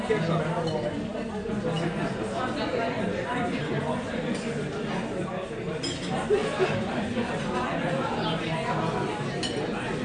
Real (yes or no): yes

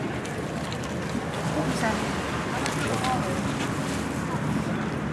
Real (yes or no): yes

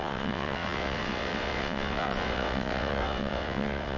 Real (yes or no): no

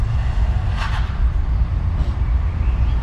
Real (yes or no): yes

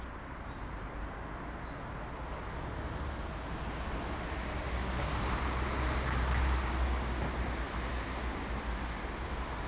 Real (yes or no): yes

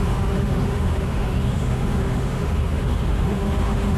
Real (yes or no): no